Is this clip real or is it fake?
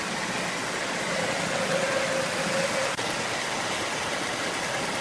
real